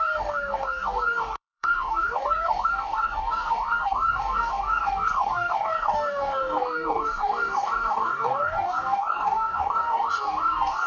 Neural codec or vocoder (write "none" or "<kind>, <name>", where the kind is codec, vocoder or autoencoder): codec, DAC